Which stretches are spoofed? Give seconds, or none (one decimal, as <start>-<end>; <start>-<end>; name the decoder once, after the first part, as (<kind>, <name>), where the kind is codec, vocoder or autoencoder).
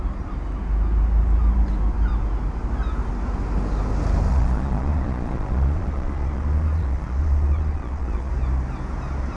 4.3-8.3 (vocoder, Vocos)